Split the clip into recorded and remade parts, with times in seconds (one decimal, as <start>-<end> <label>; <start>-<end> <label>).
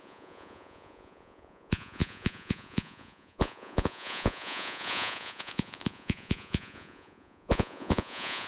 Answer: 0.0-8.5 remade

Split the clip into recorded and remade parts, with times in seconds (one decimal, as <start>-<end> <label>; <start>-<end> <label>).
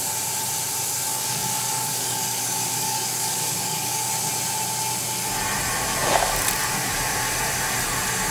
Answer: 0.0-1.1 recorded; 1.1-4.1 remade; 4.1-8.3 recorded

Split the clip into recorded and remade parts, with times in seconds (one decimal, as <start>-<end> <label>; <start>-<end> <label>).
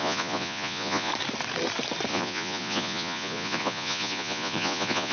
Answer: 0.0-1.1 remade; 1.1-2.1 recorded; 2.1-5.1 remade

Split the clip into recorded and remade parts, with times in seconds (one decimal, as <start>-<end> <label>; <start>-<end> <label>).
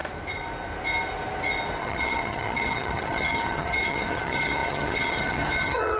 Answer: 0.0-1.8 recorded; 1.8-6.0 remade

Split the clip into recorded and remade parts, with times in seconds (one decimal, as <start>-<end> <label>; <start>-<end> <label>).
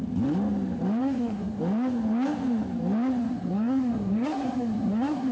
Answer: 0.0-1.0 recorded; 1.0-1.6 remade; 1.6-3.2 recorded; 3.2-5.3 remade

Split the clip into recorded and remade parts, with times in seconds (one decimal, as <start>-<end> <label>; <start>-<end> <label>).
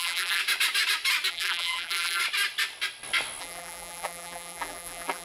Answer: 0.0-0.4 remade; 0.4-1.3 recorded; 1.3-2.2 remade; 2.2-3.4 recorded; 3.4-5.2 remade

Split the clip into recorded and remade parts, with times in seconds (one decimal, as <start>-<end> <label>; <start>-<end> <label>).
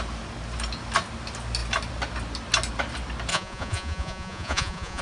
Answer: 0.0-3.3 recorded; 3.3-5.0 remade